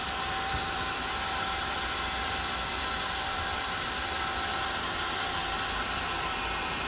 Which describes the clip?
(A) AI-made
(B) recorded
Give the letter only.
A